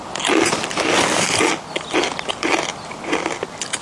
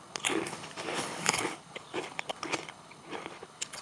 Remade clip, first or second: second